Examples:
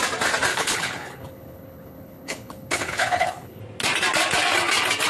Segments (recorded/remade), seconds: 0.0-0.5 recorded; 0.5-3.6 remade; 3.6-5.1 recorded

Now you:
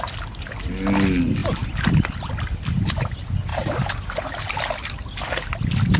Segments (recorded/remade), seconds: 0.0-1.4 recorded; 1.4-1.9 remade; 1.9-3.5 recorded; 3.5-4.9 remade; 4.9-6.0 recorded

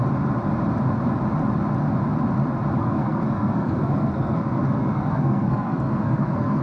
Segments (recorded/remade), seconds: 0.0-2.8 recorded; 2.8-6.6 remade

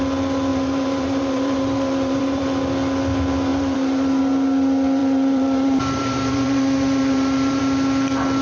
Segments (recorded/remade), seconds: 0.0-0.5 recorded; 0.5-2.4 remade; 2.4-3.5 recorded; 3.5-4.2 remade; 4.2-5.0 recorded; 5.0-7.6 remade; 7.6-8.4 recorded

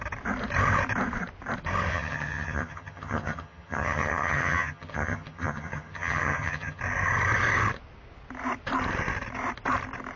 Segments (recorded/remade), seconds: 0.0-1.9 recorded; 1.9-6.8 remade; 6.8-10.2 recorded

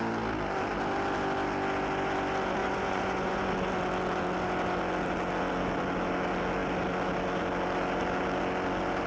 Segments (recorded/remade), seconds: 0.0-2.6 recorded; 2.6-3.5 remade; 3.5-9.1 recorded

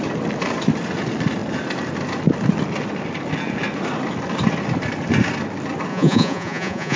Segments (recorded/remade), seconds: 0.0-5.9 recorded; 5.9-7.0 remade